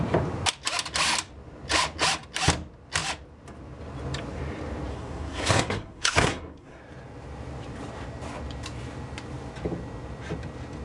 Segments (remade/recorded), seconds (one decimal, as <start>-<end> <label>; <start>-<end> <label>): 0.0-4.9 recorded; 4.9-6.8 remade; 6.8-10.8 recorded